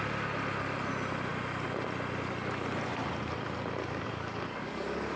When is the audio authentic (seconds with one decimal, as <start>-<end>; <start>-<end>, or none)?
0.0-3.8